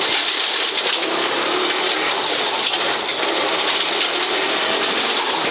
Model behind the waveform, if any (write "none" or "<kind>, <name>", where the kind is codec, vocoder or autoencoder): vocoder, BigVGAN v2